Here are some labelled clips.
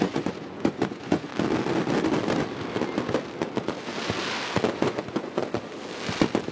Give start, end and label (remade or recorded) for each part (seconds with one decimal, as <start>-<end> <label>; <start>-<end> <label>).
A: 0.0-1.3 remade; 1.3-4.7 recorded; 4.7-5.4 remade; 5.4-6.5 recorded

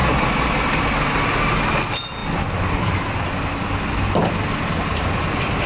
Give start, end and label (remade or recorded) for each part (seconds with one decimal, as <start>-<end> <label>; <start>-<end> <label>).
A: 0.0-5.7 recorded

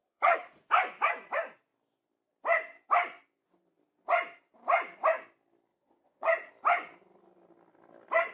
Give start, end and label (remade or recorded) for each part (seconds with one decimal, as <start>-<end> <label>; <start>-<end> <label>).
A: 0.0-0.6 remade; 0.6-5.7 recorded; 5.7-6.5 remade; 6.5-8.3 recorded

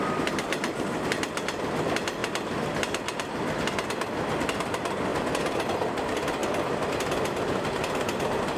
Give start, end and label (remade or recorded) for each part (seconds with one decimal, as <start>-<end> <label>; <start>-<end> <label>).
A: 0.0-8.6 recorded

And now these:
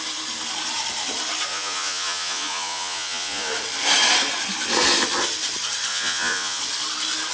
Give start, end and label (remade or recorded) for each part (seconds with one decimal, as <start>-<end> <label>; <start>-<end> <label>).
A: 0.0-1.5 recorded; 1.5-3.5 remade; 3.5-5.9 recorded; 5.9-6.6 remade; 6.6-7.3 recorded

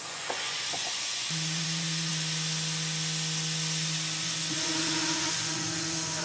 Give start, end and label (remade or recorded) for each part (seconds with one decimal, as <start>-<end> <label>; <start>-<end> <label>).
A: 0.0-2.1 remade; 2.1-4.2 recorded; 4.2-6.2 remade

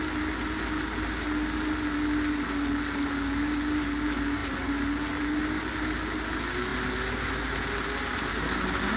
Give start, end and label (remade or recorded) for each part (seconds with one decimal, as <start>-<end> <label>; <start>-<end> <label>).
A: 0.0-9.0 recorded